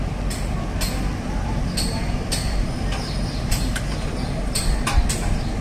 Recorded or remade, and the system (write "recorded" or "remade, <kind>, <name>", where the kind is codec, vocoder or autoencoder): recorded